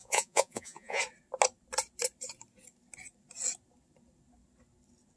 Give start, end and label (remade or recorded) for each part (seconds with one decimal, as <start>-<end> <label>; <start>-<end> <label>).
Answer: 0.0-1.0 remade; 1.0-5.2 recorded